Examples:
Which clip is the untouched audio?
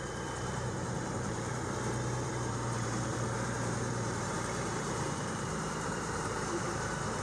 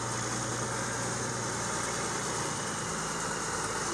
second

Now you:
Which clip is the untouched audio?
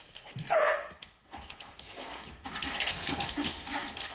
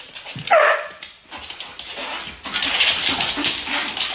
second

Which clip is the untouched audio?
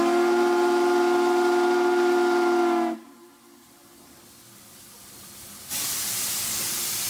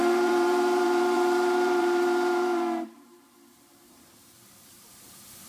first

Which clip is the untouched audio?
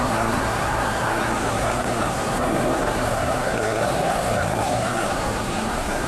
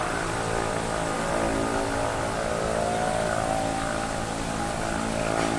second